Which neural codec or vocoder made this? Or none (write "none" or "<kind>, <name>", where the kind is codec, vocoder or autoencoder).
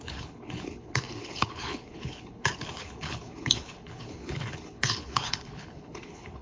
codec, HILCodec